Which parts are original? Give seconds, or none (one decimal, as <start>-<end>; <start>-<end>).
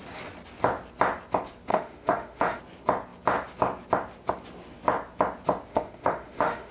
0.0-1.7; 2.6-5.7